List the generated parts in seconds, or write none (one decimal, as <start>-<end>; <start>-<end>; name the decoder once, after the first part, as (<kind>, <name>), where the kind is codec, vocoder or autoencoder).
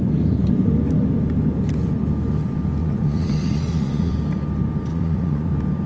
2.8-4.1 (vocoder, Vocos); 4.9-5.5